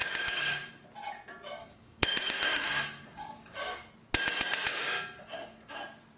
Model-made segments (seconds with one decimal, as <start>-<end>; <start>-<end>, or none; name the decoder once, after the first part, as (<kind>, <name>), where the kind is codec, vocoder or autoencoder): 0.0-0.7 (codec, DAC); 1.6-3.9; 4.7-5.6